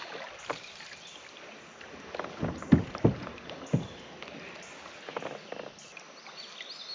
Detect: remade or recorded recorded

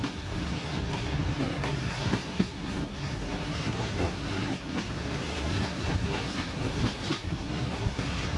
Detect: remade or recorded remade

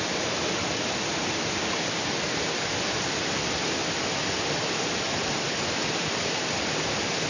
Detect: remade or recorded recorded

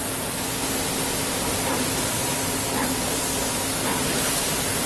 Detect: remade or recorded recorded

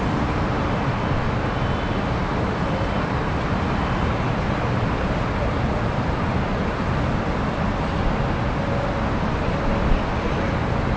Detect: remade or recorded recorded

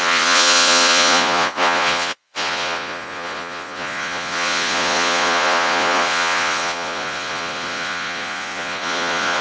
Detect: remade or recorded remade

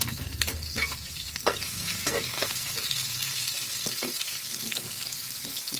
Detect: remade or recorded remade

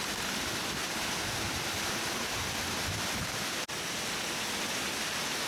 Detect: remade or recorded recorded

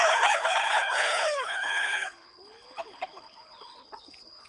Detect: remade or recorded remade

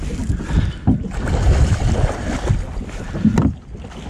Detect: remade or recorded recorded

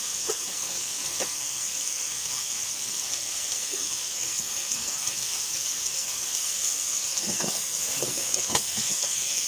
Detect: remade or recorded remade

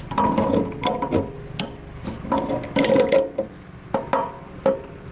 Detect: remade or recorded recorded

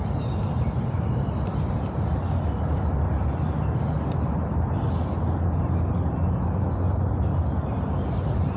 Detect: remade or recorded recorded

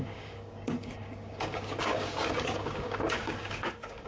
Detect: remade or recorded remade